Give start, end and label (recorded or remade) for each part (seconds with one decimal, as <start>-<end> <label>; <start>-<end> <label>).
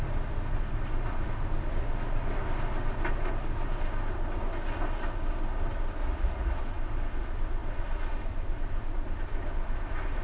0.0-6.0 recorded; 6.0-6.6 remade; 6.6-10.2 recorded